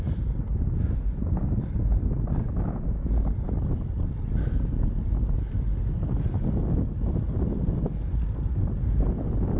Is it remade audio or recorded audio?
recorded